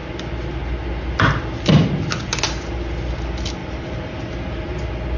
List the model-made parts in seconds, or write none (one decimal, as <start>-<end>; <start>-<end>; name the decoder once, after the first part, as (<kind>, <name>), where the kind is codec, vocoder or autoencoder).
none